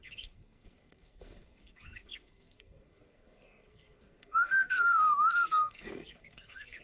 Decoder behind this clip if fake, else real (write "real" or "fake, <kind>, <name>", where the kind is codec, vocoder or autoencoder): fake, codec, SNAC